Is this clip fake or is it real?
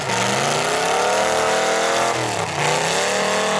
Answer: real